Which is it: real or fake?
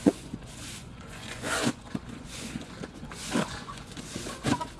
fake